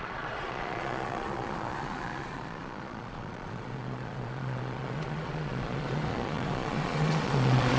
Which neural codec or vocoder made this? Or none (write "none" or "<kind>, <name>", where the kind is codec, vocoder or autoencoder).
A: vocoder, Vocos